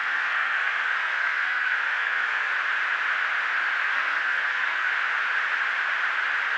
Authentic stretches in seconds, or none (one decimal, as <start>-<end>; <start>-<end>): 2.5-3.8; 4.9-6.6